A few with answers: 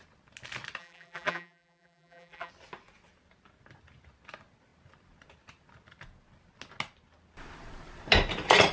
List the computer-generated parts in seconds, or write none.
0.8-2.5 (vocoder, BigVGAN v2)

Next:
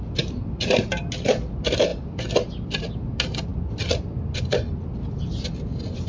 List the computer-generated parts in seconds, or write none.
none

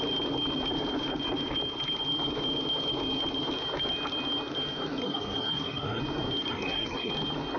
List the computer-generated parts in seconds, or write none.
5.0-6.0 (codec, SNAC); 6.5-7.1

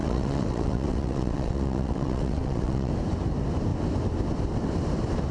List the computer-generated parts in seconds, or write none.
0.0-2.9 (vocoder, WaveNeXt)

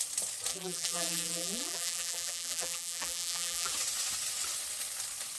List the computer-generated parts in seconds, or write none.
0.5-3.7 (vocoder, BigVGAN v2)

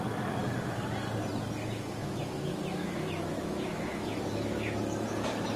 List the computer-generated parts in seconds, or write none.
2.0-4.8 (autoencoder, DAC-VAE)

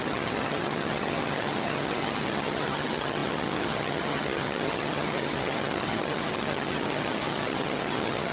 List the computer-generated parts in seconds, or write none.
0.0-8.3 (vocoder, HiFi-GAN)

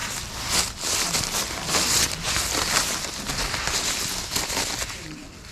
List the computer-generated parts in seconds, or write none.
none